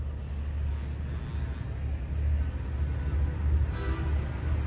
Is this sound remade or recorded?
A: recorded